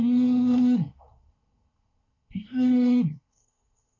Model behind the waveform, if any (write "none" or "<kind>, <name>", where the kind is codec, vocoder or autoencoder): codec, SNAC